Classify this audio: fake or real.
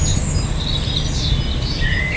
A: real